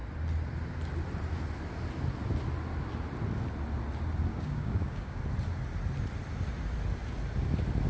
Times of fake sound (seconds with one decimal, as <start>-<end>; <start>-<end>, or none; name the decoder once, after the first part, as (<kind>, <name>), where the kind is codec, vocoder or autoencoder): 4.3-5.2 (codec, DAC)